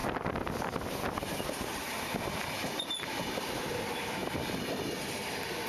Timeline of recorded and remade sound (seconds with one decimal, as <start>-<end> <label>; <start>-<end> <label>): 0.0-4.2 recorded; 4.2-4.8 remade; 4.8-5.7 recorded